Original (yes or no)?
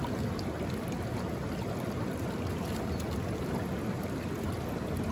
yes